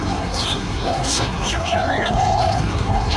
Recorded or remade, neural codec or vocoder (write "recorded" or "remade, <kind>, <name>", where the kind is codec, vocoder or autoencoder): remade, codec, SNAC